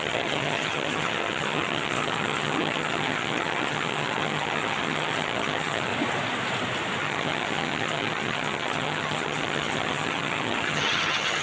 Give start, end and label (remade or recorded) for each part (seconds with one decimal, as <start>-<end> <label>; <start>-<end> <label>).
0.0-5.9 remade; 5.9-7.0 recorded; 7.0-11.4 remade